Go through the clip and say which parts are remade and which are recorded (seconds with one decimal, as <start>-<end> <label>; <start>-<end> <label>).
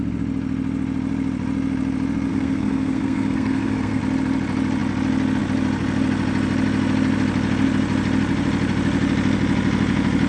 0.0-2.3 recorded; 2.3-4.0 remade; 4.0-10.3 recorded